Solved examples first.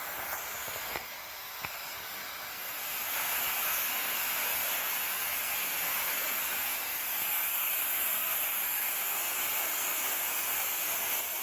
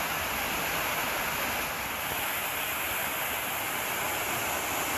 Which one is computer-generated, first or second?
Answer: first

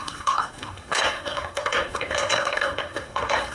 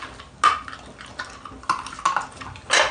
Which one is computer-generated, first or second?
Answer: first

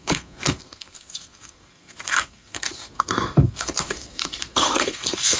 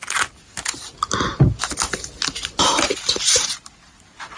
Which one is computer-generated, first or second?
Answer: first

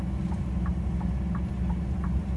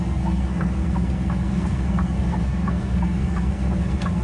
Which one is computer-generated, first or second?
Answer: second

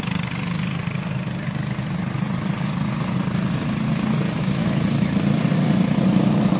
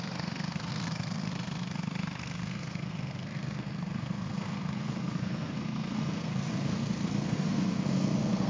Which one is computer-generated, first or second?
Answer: second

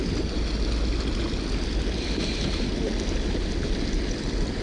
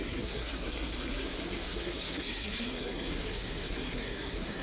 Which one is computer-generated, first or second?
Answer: second